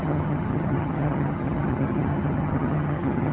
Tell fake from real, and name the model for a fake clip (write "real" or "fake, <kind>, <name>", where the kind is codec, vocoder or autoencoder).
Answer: fake, vocoder, HiFi-GAN